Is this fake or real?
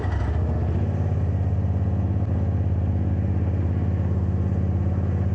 real